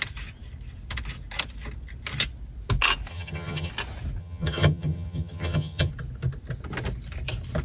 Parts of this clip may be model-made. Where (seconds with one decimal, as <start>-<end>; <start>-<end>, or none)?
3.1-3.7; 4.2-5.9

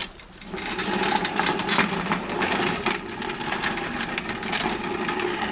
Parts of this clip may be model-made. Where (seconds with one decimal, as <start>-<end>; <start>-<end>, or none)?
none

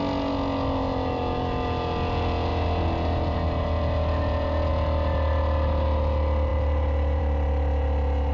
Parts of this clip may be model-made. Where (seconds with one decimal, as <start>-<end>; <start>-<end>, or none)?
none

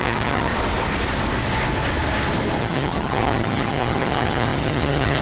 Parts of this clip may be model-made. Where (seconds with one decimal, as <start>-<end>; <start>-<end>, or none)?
0.0-0.5; 2.6-5.2